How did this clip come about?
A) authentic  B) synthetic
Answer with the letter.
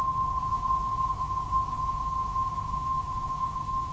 B